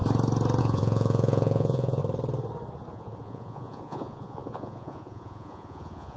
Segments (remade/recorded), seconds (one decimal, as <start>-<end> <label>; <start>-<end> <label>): 0.0-0.6 recorded; 0.6-2.0 remade; 2.0-2.9 recorded; 2.9-6.2 remade